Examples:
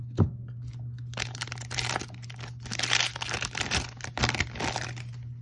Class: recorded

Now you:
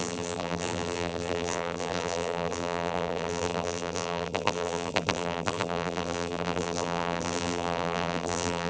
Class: remade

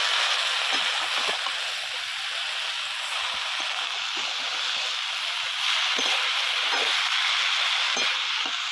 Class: recorded